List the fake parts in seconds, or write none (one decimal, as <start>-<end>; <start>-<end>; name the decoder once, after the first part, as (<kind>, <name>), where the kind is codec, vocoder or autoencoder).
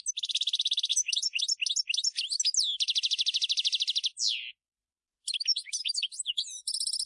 0.9-1.4 (vocoder, Vocos); 5.5-6.6